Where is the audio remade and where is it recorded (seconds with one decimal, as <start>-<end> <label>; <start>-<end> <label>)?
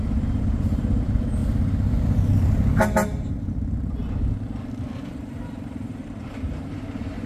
0.0-1.4 remade; 1.4-3.5 recorded; 3.5-4.0 remade; 4.0-5.1 recorded; 5.1-7.3 remade